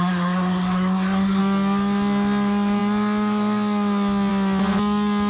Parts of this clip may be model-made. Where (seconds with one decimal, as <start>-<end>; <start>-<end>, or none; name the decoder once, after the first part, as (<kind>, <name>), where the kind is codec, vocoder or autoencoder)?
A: 0.0-1.4 (codec, SNAC)